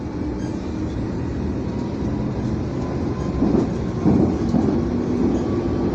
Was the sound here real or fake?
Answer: real